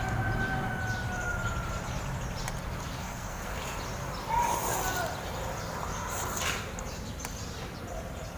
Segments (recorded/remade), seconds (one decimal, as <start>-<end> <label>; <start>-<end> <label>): 0.0-3.0 recorded; 3.0-3.6 remade; 3.6-8.4 recorded